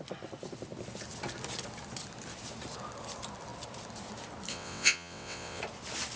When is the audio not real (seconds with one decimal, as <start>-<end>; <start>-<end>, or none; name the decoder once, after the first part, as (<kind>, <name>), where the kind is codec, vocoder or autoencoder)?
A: 4.5-5.6 (vocoder, WaveNeXt)